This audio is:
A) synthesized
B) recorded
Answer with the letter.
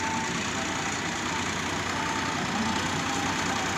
B